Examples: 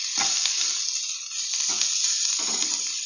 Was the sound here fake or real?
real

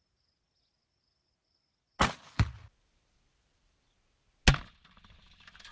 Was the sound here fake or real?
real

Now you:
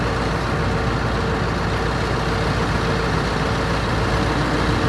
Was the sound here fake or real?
real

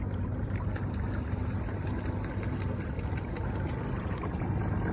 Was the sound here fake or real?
real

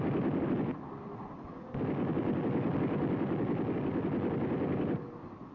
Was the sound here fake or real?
real